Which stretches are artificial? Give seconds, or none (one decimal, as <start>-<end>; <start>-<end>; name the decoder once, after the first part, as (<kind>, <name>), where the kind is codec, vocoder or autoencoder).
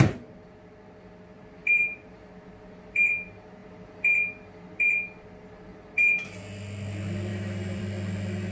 1.6-2.3 (vocoder, BigVGAN v2); 7.3-7.8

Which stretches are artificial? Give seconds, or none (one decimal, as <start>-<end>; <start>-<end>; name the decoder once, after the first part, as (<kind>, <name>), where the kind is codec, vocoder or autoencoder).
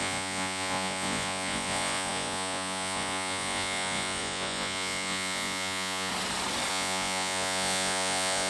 0.0-6.1 (vocoder, Vocos); 6.7-8.5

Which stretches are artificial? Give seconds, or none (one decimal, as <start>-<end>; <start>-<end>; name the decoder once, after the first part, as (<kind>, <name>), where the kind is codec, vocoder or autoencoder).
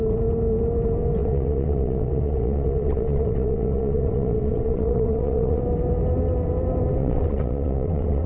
1.2-5.6 (vocoder, WaveNeXt); 7.0-8.3